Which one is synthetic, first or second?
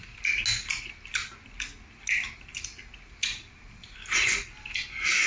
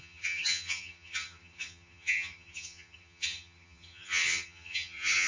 second